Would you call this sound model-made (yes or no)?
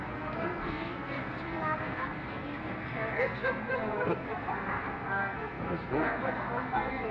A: yes